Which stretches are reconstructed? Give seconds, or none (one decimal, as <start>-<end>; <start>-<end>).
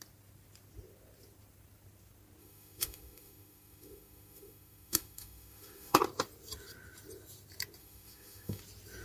2.4-6.0; 7.8-8.6